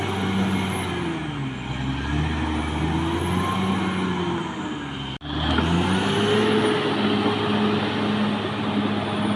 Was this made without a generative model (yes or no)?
yes